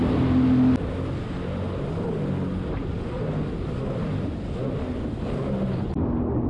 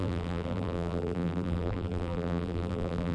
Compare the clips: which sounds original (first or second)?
first